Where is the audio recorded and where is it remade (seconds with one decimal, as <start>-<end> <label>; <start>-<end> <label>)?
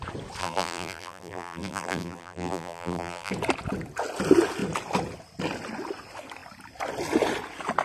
0.0-0.4 recorded; 0.4-3.3 remade; 3.3-7.8 recorded